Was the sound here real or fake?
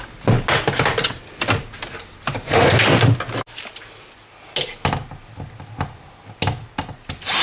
real